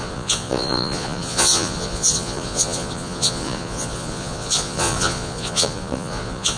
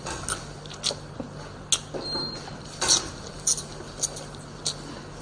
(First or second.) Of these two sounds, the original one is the second